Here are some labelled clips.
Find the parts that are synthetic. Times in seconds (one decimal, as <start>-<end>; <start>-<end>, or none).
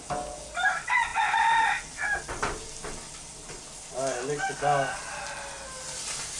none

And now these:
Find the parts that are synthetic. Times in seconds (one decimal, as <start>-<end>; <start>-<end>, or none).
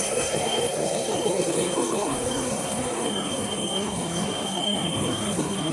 0.0-5.7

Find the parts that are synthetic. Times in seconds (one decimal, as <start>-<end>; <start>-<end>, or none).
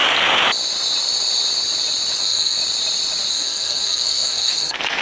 2.2-2.6; 3.3-5.0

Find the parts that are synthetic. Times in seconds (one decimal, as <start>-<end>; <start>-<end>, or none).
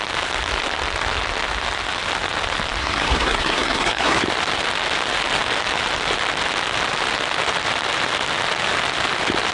2.8-4.2